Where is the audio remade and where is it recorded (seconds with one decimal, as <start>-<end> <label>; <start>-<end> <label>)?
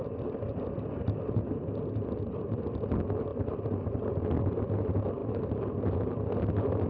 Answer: 0.0-6.9 recorded